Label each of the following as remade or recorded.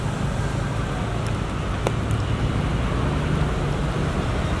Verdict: recorded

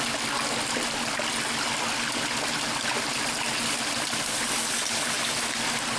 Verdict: recorded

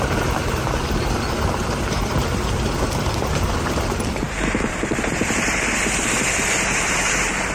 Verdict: remade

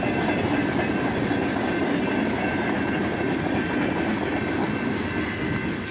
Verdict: recorded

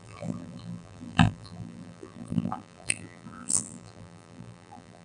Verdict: remade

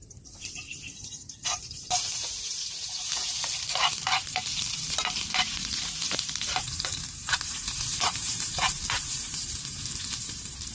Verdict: remade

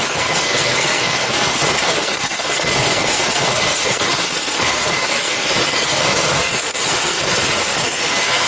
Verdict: remade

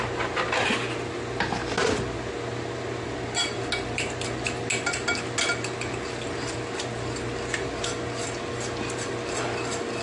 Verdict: recorded